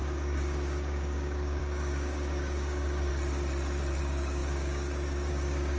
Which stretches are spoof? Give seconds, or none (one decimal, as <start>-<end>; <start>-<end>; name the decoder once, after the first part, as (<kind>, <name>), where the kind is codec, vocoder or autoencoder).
0.0-3.1 (codec, DAC); 4.0-5.8

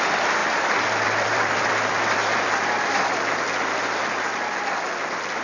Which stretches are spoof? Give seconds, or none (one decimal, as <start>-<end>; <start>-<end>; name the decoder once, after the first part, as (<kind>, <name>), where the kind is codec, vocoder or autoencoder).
0.4-3.4 (vocoder, BigVGAN v2)

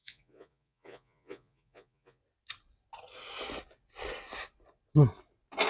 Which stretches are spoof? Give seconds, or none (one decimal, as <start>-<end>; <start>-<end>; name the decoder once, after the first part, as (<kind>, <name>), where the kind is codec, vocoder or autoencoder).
0.0-2.2 (vocoder, Vocos)

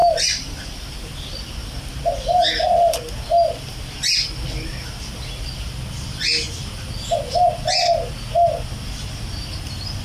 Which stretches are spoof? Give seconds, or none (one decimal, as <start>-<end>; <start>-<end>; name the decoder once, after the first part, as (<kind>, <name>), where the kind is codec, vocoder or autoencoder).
0.0-1.1 (vocoder, BigVGAN v2)

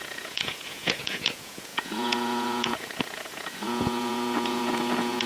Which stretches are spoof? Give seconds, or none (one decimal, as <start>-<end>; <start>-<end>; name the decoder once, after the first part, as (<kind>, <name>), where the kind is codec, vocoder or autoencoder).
0.0-5.3 (vocoder, Vocos)

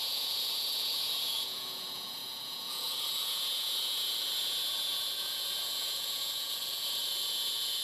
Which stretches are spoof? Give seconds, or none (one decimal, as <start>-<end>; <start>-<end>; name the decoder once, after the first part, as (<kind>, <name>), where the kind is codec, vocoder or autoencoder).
0.0-7.8 (vocoder, Vocos)

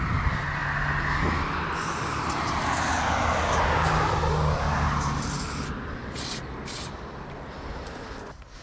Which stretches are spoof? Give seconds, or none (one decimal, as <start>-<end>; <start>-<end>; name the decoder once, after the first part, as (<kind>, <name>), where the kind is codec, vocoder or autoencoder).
none